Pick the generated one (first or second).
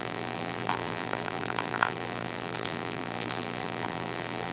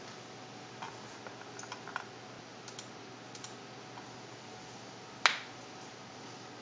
first